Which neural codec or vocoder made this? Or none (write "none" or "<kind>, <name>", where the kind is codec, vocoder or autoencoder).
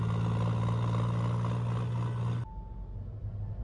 none